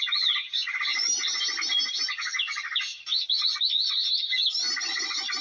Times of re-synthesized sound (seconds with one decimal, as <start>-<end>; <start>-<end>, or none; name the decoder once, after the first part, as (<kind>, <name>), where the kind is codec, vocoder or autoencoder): none